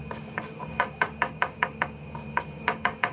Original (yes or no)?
no